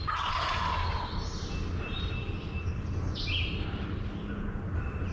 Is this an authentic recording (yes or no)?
yes